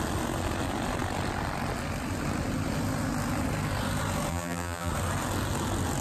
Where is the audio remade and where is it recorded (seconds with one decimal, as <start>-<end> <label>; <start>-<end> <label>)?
0.0-4.3 recorded; 4.3-4.9 remade; 4.9-6.0 recorded